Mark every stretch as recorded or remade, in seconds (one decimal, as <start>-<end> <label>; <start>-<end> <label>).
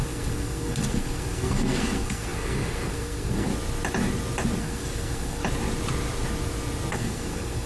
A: 0.0-3.5 remade; 3.5-4.6 recorded; 4.6-5.4 remade; 5.4-6.9 recorded; 6.9-7.7 remade